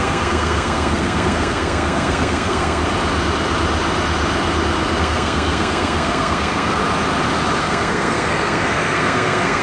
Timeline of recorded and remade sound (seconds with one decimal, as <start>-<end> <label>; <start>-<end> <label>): 0.0-2.8 remade; 2.8-5.0 recorded; 5.0-6.8 remade; 6.8-7.6 recorded; 7.6-9.6 remade